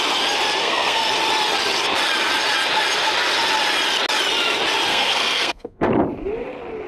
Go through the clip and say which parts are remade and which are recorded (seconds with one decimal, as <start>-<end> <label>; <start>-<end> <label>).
0.0-0.6 recorded; 0.6-1.1 remade; 1.1-4.9 recorded; 4.9-5.9 remade; 5.9-6.9 recorded